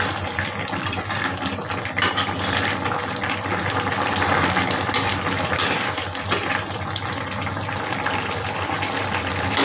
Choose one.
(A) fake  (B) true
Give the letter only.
B